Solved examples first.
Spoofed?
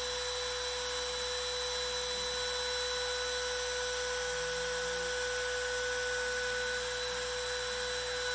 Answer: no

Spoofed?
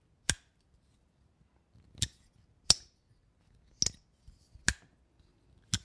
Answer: no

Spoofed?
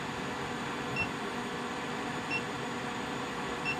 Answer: yes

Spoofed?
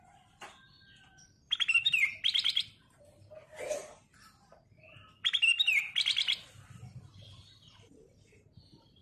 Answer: yes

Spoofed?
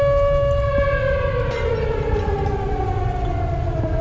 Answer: no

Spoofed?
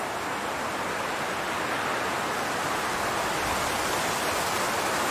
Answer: no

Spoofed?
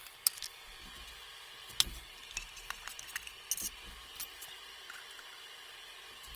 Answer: no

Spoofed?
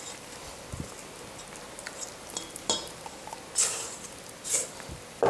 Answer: no